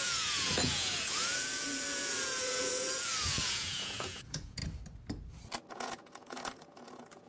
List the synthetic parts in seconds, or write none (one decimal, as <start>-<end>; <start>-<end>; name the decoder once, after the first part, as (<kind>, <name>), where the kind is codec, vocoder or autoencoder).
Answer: 0.0-4.6 (vocoder, Vocos); 5.7-7.3